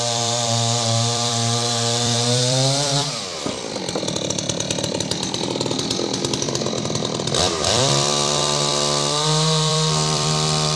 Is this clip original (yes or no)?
no